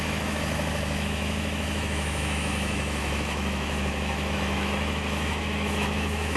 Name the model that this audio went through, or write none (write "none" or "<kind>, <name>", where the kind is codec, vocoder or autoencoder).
autoencoder, DAC-VAE